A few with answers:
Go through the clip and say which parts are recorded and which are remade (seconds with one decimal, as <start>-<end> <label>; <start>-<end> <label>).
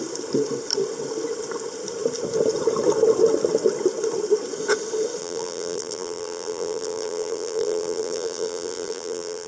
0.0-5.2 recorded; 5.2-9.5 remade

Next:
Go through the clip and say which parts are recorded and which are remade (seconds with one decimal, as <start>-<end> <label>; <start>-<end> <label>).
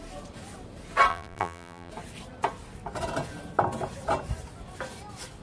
0.0-1.1 recorded; 1.1-1.9 remade; 1.9-5.4 recorded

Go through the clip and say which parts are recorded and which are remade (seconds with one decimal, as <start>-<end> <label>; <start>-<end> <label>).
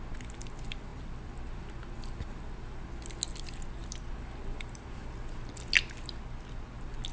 0.0-0.9 recorded; 0.9-2.9 remade; 2.9-3.8 recorded; 3.8-5.0 remade; 5.0-7.1 recorded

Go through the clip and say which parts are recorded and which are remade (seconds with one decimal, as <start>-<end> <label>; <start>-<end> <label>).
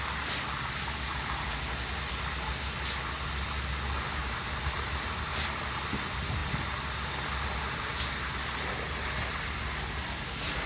0.0-4.2 recorded; 4.2-5.3 remade; 5.3-10.7 recorded